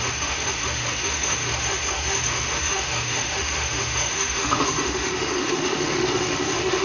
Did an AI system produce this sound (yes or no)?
yes